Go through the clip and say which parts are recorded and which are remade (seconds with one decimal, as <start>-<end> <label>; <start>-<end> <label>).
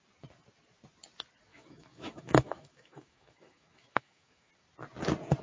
0.0-1.5 recorded; 1.5-4.5 remade; 4.5-5.4 recorded